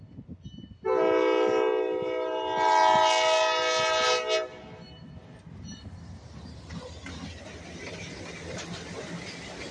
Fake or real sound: real